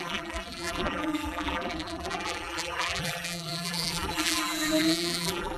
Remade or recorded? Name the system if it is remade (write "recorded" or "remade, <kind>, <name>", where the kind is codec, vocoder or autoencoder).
remade, vocoder, BigVGAN v2